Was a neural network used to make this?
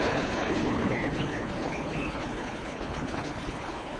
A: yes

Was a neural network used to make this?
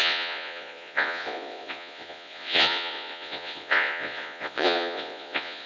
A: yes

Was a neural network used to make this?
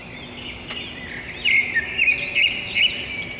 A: no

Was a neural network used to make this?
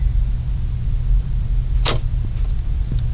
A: yes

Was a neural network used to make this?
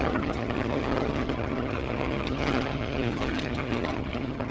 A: yes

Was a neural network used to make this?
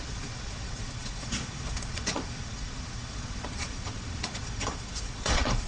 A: yes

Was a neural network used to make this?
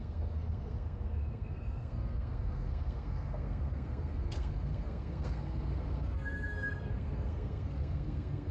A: yes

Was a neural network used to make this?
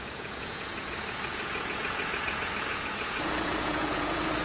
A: yes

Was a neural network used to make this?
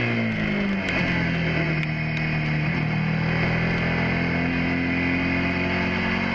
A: no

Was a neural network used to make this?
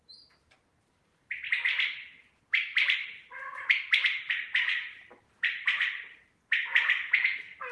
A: no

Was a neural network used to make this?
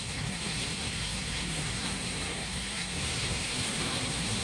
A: yes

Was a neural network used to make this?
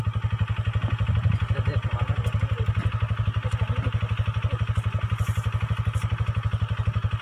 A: no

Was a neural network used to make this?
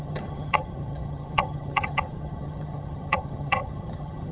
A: yes